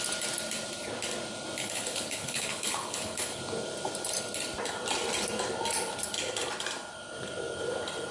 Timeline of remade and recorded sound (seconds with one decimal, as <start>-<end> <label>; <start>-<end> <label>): 0.0-1.6 recorded; 1.6-3.4 remade; 3.4-8.1 recorded